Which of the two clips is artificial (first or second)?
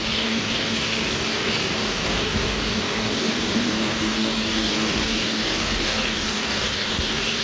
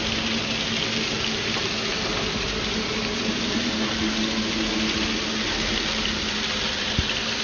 first